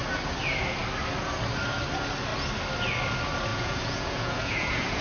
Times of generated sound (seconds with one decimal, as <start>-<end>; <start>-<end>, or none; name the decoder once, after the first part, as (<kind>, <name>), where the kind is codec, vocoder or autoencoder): 3.5-5.0 (vocoder, Vocos)